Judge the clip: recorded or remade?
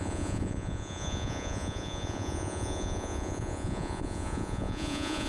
remade